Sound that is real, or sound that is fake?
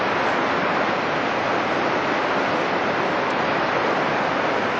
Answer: real